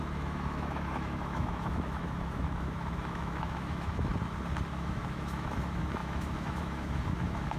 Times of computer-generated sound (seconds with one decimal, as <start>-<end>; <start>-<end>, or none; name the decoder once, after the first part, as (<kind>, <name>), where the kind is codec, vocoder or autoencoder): 0.0-4.1 (autoencoder, DAC-VAE); 4.7-7.6